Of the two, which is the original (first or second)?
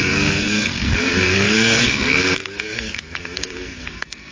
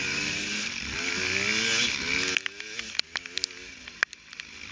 second